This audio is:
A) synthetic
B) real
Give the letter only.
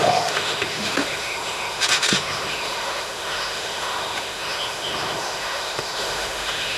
A